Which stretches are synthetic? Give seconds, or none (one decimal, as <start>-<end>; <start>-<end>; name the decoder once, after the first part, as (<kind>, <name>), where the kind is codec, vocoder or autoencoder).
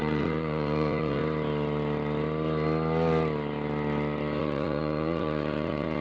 0.0-1.2 (vocoder, Vocos); 4.4-6.0